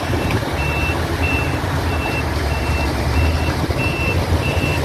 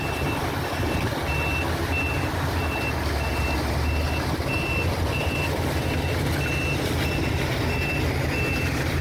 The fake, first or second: first